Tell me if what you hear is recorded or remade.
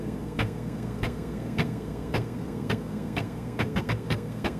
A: remade